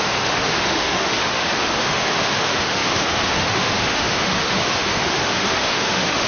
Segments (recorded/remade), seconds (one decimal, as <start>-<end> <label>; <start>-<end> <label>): 0.0-6.3 remade